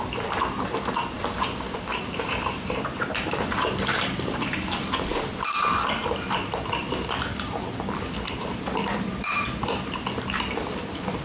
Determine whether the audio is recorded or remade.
remade